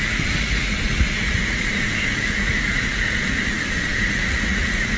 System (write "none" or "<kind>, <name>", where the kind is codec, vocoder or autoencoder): vocoder, Vocos